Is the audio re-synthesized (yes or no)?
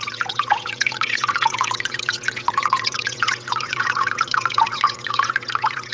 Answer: yes